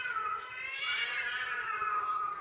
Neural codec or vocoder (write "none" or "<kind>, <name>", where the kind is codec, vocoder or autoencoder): vocoder, Vocos